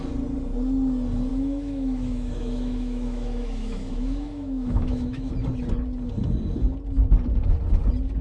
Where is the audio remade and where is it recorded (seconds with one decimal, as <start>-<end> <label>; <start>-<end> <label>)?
0.0-1.3 recorded; 1.3-5.3 remade; 5.3-8.2 recorded